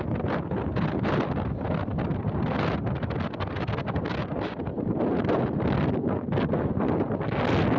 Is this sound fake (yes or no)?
no